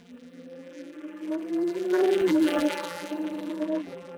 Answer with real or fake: fake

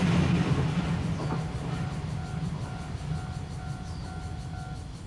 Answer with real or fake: real